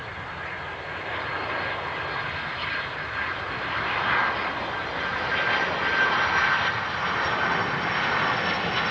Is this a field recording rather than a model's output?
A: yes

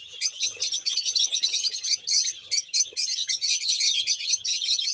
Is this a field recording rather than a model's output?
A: no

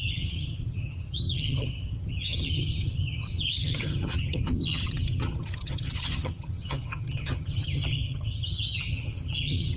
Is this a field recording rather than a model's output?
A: no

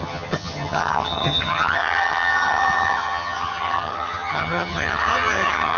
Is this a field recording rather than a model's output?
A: no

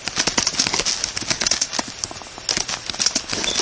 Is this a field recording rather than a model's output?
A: yes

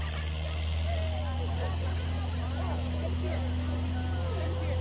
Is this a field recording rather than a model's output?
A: yes